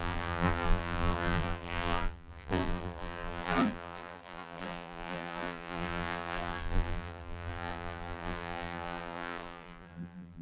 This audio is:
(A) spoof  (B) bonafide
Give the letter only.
A